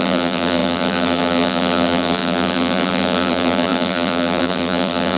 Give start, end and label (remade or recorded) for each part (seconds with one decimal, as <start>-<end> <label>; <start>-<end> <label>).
0.0-5.2 remade